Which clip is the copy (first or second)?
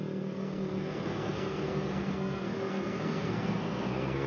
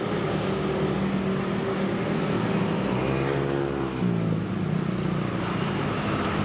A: first